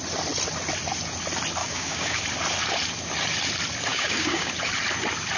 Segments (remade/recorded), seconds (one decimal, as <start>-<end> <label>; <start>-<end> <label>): 0.0-1.6 recorded; 1.6-2.2 remade; 2.2-3.9 recorded; 3.9-4.5 remade; 4.5-5.4 recorded